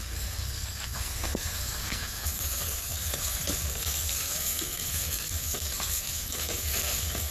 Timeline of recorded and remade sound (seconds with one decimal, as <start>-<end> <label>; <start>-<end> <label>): 0.0-7.3 remade